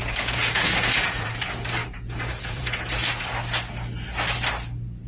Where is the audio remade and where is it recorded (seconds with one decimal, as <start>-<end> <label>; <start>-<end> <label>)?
0.0-1.4 remade; 1.4-1.8 recorded; 1.8-2.8 remade; 2.8-5.1 recorded